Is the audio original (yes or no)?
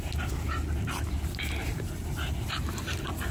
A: yes